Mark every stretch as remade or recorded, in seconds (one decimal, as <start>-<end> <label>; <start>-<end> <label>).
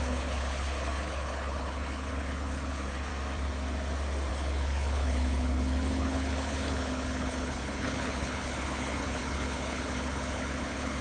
0.0-3.1 remade; 3.1-4.3 recorded; 4.3-11.0 remade